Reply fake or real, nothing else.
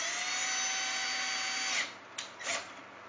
real